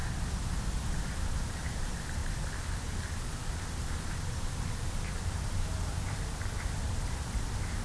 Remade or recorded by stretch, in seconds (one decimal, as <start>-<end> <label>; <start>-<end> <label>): 0.0-0.9 recorded; 0.9-2.2 remade; 2.2-4.9 recorded; 4.9-7.8 remade